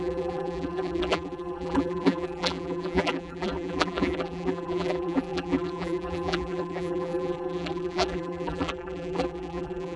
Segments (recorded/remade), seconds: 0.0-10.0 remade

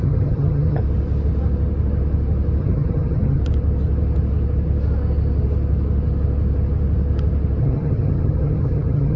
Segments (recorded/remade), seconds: 0.0-0.8 remade; 0.8-2.6 recorded; 2.6-3.4 remade; 3.4-7.6 recorded; 7.6-9.2 remade

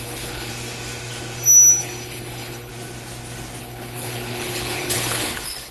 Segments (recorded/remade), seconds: 0.0-0.5 remade; 0.5-1.8 recorded; 1.8-2.7 remade; 2.7-3.6 recorded; 3.6-5.7 remade

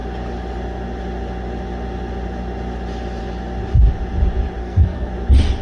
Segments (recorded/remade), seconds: 0.0-4.6 recorded; 4.6-5.1 remade; 5.1-5.6 recorded

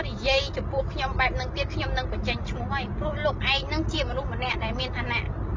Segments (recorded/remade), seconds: 0.0-5.6 recorded